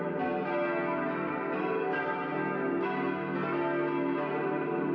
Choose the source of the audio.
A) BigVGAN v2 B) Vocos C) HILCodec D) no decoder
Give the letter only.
D